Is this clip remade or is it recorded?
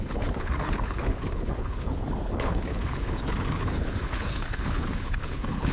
remade